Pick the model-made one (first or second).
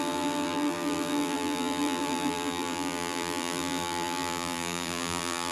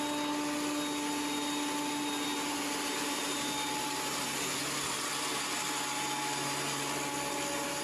first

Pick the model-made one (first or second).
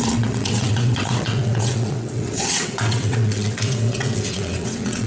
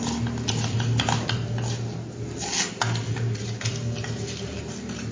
first